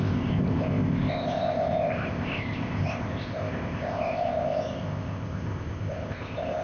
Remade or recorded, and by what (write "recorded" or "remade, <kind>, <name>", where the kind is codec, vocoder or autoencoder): remade, codec, ZipCodec